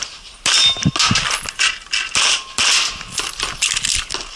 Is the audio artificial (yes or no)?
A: no